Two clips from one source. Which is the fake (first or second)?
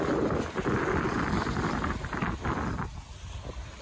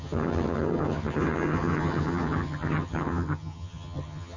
second